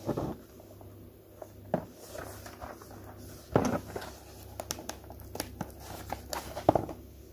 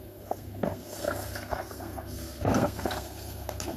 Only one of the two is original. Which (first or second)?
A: first